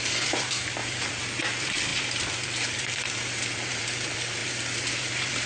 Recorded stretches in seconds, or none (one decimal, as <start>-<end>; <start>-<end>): none